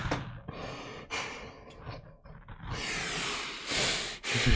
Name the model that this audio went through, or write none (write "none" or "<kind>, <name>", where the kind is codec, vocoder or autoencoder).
none